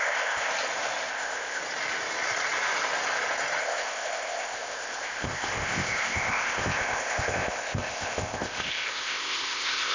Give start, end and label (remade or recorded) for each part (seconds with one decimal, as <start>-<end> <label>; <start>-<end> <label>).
0.0-0.5 remade; 0.5-1.1 recorded; 1.1-1.6 remade; 1.6-3.6 recorded; 3.6-9.9 remade